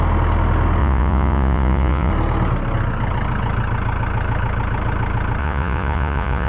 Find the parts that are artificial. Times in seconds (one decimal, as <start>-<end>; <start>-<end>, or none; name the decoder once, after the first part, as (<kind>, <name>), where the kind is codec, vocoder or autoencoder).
0.8-2.1 (vocoder, Vocos); 5.4-6.5